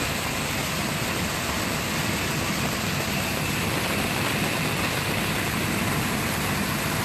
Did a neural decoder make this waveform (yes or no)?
no